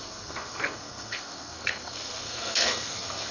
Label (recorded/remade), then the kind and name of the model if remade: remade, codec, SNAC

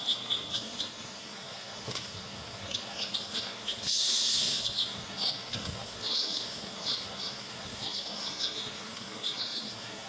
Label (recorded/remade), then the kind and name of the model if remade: remade, codec, SNAC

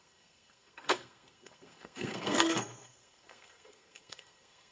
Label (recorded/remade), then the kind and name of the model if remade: remade, codec, SNAC